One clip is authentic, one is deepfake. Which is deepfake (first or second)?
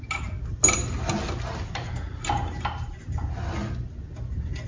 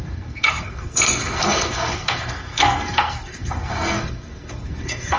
second